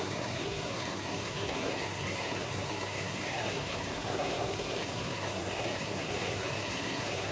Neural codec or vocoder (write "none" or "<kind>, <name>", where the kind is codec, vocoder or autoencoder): codec, SNAC